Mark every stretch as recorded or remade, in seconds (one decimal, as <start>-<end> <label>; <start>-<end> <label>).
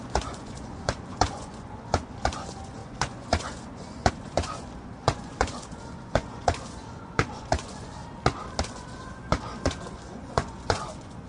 0.0-8.0 remade; 8.0-8.6 recorded; 8.6-11.3 remade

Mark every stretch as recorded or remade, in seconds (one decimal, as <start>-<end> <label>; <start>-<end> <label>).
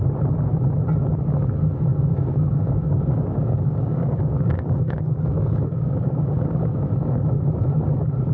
0.0-1.9 recorded; 1.9-6.9 remade; 6.9-8.3 recorded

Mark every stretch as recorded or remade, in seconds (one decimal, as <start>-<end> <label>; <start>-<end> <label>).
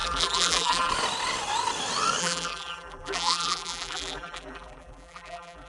0.0-0.9 remade; 0.9-2.2 recorded; 2.2-5.7 remade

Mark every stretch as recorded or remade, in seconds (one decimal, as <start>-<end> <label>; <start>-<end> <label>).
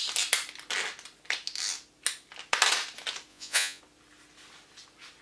0.0-3.3 recorded; 3.3-3.8 remade; 3.8-5.2 recorded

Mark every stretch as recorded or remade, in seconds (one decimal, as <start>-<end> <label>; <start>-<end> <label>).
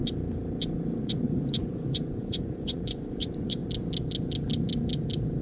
0.0-1.0 recorded; 1.0-3.6 remade; 3.6-5.4 recorded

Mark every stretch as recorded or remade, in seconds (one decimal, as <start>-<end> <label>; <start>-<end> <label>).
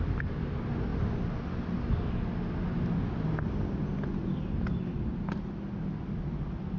0.0-6.8 recorded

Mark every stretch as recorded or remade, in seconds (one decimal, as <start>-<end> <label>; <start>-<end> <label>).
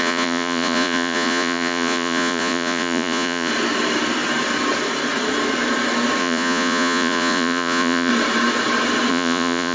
0.0-3.5 remade; 3.5-6.2 recorded; 6.2-8.1 remade; 8.1-9.1 recorded; 9.1-9.7 remade